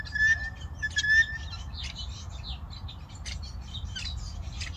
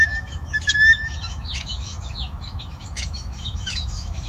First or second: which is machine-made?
second